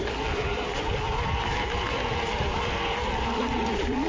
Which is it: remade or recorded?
remade